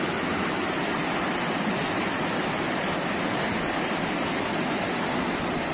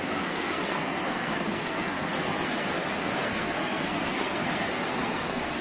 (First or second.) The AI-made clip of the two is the second